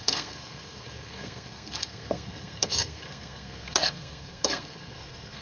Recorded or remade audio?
remade